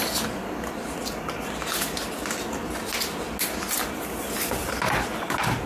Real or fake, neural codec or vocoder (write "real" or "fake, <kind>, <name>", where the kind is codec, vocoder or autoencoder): real